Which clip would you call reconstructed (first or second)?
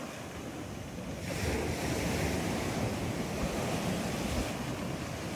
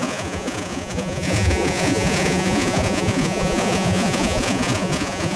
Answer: second